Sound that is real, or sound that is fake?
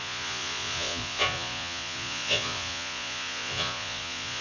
fake